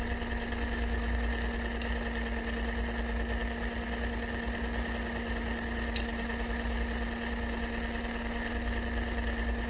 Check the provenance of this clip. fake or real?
real